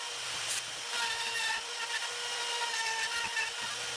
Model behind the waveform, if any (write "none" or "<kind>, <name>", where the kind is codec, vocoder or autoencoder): none